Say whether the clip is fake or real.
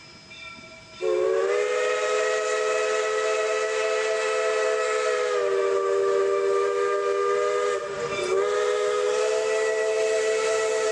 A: real